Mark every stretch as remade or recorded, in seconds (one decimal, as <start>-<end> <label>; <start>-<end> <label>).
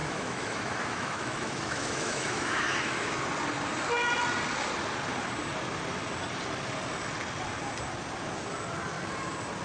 0.0-3.2 remade; 3.2-9.6 recorded